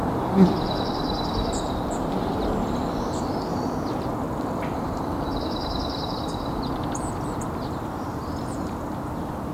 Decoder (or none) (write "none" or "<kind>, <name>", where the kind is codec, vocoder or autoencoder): vocoder, BigVGAN v2